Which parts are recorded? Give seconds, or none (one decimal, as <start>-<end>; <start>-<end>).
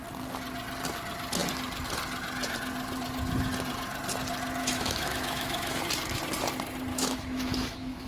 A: 0.0-4.6; 5.8-6.9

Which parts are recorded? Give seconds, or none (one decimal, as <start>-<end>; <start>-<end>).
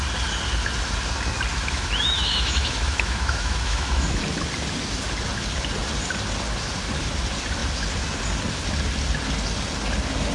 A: 0.0-1.5; 4.2-10.3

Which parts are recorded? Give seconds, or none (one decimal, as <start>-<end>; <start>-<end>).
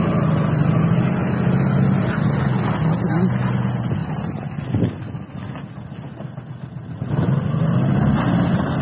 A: 0.0-8.8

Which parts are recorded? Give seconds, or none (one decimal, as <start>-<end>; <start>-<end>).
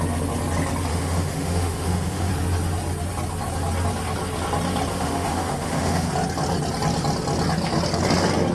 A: 0.0-0.9; 2.3-4.9; 6.1-8.5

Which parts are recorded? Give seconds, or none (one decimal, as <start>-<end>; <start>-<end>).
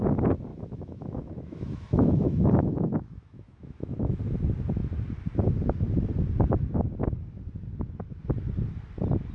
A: 0.0-0.5; 4.2-9.3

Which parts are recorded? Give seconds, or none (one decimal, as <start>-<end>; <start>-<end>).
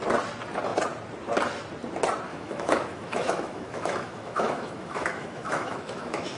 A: 0.0-2.3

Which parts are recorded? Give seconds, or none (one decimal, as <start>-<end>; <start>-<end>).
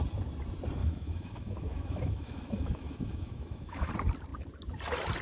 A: 0.0-0.8; 3.9-5.2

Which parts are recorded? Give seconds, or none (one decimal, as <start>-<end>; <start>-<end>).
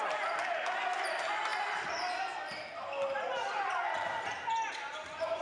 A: 0.0-5.4